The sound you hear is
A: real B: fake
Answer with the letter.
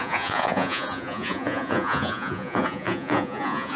B